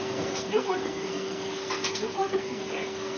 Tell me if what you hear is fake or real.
fake